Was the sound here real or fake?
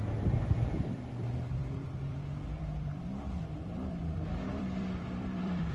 fake